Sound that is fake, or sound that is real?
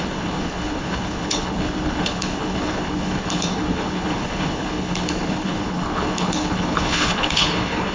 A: fake